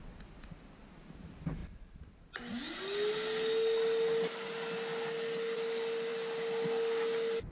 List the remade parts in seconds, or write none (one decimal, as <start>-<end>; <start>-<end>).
none